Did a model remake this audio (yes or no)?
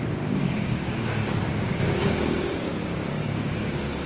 yes